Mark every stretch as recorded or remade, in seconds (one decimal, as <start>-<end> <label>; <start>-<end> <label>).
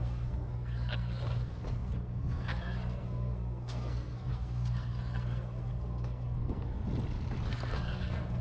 0.0-6.8 remade; 6.8-7.5 recorded; 7.5-8.4 remade